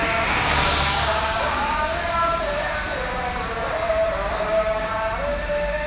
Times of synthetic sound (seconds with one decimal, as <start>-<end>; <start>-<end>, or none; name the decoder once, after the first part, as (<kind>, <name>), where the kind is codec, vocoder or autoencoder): 0.0-1.9 (codec, DAC); 4.3-4.9; 5.5-5.9

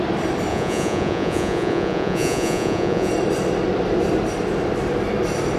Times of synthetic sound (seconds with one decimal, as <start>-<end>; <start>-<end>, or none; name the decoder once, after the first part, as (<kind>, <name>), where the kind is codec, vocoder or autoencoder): 0.5-3.1 (vocoder, Vocos)

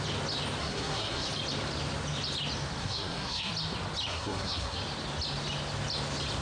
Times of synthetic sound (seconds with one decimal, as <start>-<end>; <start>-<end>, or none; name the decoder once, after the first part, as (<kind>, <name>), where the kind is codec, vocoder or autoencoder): 0.6-1.3 (codec, SNAC); 2.8-3.5; 4.1-4.8

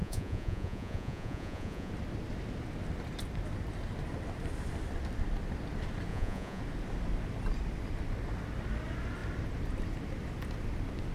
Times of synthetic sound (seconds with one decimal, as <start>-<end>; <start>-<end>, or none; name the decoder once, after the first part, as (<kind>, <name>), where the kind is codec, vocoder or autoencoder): 0.0-1.9 (vocoder, Vocos); 6.1-6.6

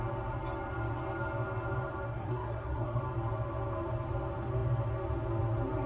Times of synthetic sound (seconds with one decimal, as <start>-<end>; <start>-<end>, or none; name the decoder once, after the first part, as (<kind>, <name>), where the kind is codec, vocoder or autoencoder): 2.1-3.0 (codec, SNAC)

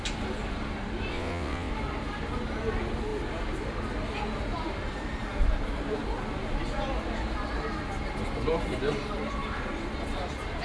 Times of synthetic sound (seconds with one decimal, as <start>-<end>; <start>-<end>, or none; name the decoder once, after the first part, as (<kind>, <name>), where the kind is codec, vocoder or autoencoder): 1.1-1.7 (vocoder, WaveNeXt)

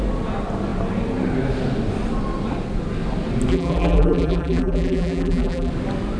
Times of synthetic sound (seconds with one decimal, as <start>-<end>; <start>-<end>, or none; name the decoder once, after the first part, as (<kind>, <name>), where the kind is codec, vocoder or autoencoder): 3.5-5.7 (vocoder, BigVGAN v2)

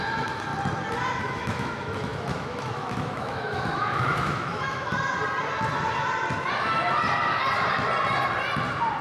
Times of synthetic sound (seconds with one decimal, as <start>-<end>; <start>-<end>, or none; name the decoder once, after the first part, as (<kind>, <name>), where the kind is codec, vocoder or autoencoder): 0.0-0.5 (autoencoder, DAC-VAE); 1.2-4.9